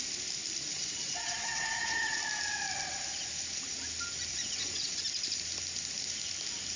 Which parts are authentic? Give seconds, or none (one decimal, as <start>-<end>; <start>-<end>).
0.0-0.7; 2.2-4.3; 5.0-6.8